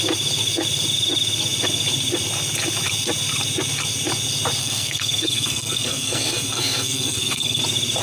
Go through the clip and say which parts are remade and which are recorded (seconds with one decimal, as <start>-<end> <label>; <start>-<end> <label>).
0.0-4.6 recorded; 4.6-7.6 remade; 7.6-8.0 recorded